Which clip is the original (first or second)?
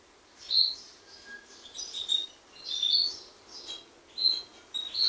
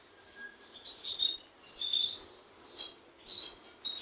first